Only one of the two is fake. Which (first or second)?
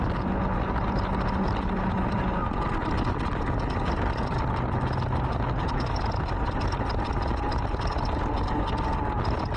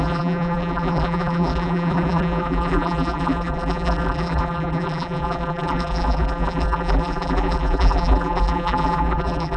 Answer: second